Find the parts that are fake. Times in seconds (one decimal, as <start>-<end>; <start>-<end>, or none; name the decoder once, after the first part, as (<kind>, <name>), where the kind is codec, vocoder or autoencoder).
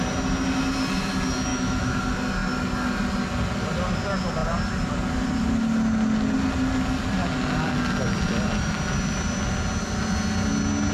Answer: 1.5-2.0 (autoencoder, DAC-VAE)